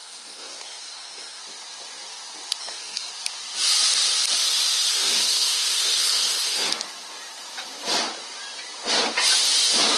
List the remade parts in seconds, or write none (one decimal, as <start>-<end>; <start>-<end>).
0.0-1.4; 2.6-3.1; 4.9-6.7